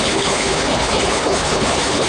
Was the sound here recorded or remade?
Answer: remade